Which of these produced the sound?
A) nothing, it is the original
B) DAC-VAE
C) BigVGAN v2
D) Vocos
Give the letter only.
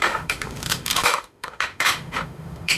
B